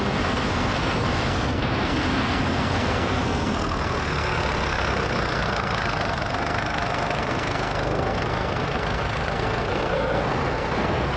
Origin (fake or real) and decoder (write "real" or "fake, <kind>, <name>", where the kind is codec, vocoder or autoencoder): fake, codec, SNAC